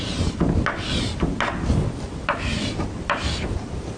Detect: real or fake real